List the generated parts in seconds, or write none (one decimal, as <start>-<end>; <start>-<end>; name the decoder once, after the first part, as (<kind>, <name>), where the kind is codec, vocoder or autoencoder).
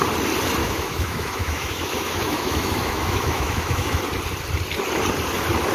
0.6-4.0 (autoencoder, DAC-VAE)